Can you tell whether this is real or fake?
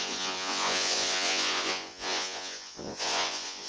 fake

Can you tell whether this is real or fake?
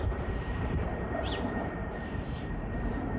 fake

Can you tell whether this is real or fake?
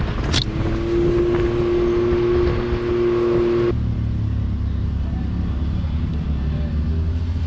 real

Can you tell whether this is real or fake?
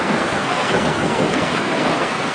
fake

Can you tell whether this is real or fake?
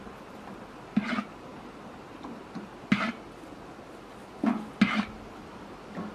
real